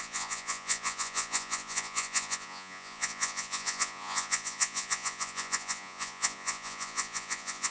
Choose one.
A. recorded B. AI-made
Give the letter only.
B